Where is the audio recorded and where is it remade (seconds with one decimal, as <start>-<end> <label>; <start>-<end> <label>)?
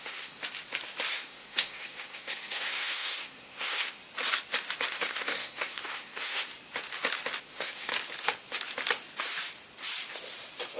0.0-0.4 remade; 0.4-1.1 recorded; 1.1-4.0 remade; 4.0-4.9 recorded; 4.9-6.5 remade; 6.5-7.4 recorded; 7.4-7.9 remade; 7.9-10.8 recorded